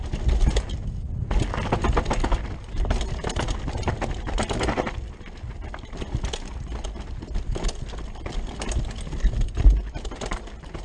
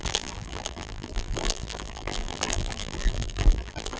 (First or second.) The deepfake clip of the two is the second